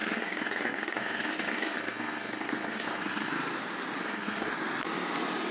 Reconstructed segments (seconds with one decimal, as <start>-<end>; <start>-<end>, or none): 0.0-3.3; 4.0-4.5